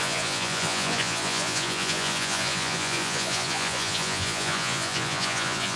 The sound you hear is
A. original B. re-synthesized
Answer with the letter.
B